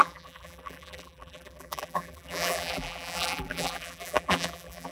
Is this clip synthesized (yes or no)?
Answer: yes